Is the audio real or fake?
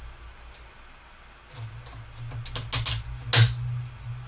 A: real